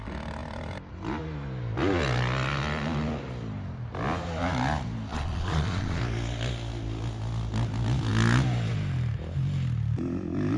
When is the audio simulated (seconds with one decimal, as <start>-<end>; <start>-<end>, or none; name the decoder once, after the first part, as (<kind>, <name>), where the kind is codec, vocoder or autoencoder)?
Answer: 5.1-6.0 (vocoder, Vocos)